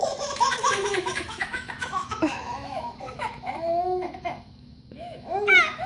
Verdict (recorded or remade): remade